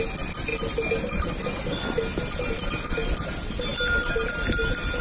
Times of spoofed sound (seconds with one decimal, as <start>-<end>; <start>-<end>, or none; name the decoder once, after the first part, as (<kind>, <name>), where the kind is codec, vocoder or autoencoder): none